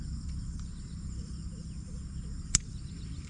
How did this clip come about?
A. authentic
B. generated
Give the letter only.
A